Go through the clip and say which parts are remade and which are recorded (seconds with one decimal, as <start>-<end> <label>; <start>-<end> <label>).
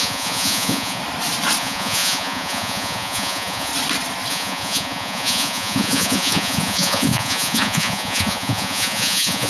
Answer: 0.0-1.0 remade; 1.0-1.6 recorded; 1.6-3.7 remade; 3.7-4.3 recorded; 4.3-9.5 remade